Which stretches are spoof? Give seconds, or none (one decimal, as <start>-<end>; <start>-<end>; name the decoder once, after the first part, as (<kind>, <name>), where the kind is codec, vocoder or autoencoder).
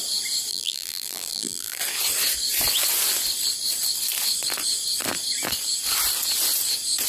0.5-1.8 (vocoder, BigVGAN v2)